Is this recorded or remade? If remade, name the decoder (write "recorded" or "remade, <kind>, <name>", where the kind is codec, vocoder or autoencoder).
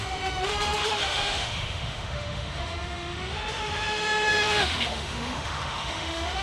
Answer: remade, autoencoder, DAC-VAE